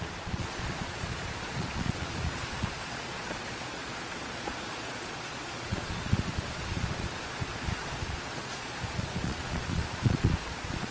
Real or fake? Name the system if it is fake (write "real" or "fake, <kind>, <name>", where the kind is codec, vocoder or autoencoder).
fake, vocoder, Vocos